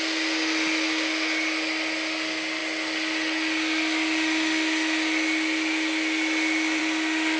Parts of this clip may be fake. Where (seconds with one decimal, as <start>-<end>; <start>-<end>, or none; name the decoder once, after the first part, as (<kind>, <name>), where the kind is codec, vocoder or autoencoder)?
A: none